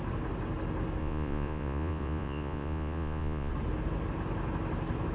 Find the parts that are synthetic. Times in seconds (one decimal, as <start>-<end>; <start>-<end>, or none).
1.0-3.5